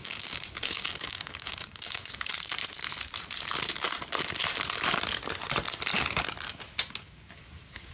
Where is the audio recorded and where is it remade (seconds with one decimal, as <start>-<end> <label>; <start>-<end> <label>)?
0.0-2.3 remade; 2.3-7.0 recorded; 7.0-7.9 remade